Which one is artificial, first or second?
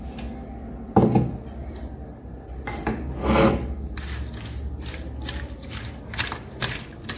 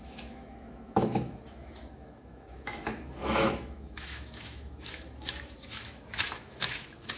second